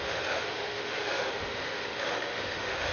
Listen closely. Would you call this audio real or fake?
fake